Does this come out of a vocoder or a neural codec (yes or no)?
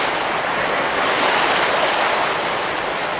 no